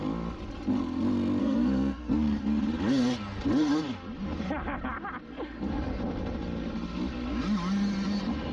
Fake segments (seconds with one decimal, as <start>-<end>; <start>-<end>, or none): 1.4-2.4